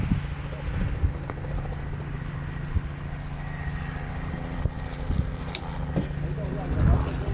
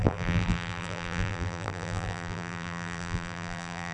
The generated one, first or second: second